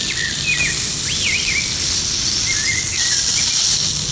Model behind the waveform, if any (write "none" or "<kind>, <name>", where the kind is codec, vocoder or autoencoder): none